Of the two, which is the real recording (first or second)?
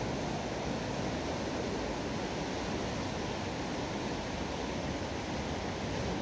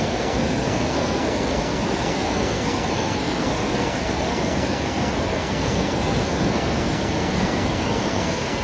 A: first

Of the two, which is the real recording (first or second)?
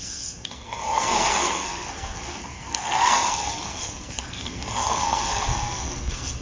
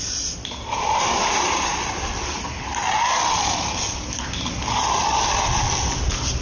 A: second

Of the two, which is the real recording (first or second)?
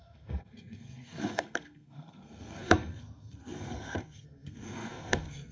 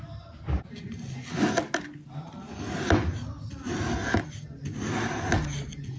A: second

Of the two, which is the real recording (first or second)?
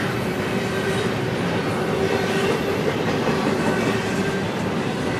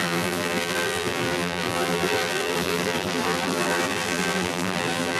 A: first